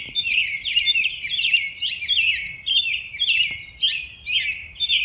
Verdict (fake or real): fake